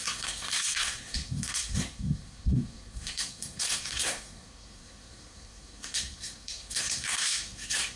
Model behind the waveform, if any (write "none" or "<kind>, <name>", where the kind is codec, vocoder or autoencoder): codec, SNAC